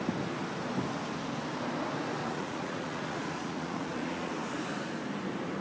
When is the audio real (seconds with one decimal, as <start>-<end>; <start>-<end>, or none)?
0.0-2.2; 4.3-5.6